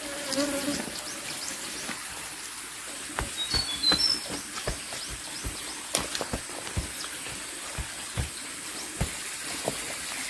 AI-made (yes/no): no